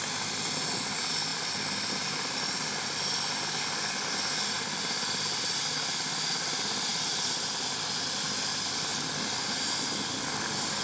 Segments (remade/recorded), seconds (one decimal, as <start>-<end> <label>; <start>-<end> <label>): 0.0-1.3 recorded; 1.3-5.6 remade; 5.6-6.9 recorded; 6.9-8.4 remade; 8.4-10.8 recorded